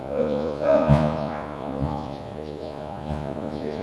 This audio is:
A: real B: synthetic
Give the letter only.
B